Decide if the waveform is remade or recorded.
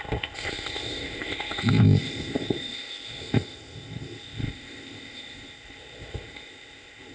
remade